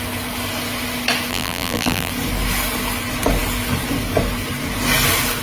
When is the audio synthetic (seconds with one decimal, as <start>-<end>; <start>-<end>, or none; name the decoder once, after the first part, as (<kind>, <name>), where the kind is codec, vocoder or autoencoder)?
1.3-2.1 (vocoder, BigVGAN v2)